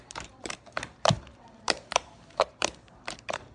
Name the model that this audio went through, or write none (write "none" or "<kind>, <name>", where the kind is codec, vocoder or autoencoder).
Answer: vocoder, BigVGAN v2